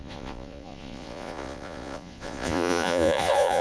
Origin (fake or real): fake